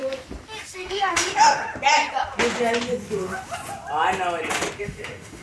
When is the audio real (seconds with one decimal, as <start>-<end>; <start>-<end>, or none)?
0.0-0.7; 1.6-4.8